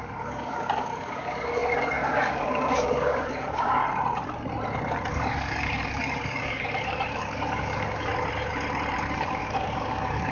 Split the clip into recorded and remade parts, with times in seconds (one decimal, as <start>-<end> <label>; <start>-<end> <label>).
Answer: 0.0-3.8 remade; 3.8-5.1 recorded; 5.1-8.1 remade; 8.1-9.1 recorded; 9.1-10.3 remade